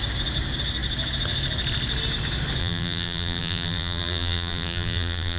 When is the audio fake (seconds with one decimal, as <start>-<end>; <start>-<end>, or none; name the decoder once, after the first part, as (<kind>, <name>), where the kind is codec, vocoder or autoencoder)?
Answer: 2.6-5.4 (vocoder, BigVGAN v2)